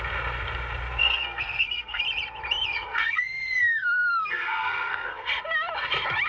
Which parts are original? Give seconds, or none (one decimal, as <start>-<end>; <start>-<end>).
0.0-1.0; 2.0-2.7; 5.3-6.3